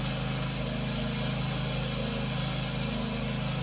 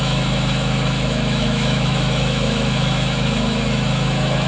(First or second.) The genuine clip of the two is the first